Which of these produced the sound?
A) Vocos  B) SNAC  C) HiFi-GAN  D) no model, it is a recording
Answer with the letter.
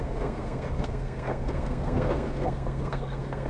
B